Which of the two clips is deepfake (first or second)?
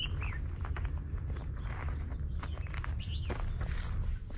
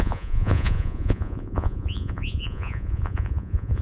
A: second